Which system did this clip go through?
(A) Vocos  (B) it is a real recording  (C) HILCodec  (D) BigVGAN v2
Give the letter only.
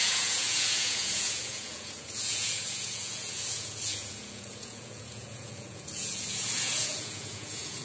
A